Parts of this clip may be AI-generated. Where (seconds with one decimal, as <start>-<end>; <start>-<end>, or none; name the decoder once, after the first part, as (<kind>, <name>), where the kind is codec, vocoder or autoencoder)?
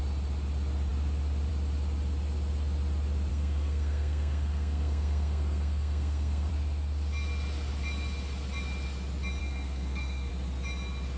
3.3-6.5 (codec, SNAC); 9.4-10.3